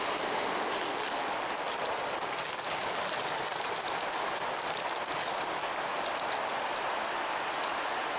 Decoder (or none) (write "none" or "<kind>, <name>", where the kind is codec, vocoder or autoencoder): none